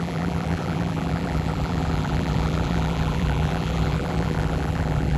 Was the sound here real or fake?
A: fake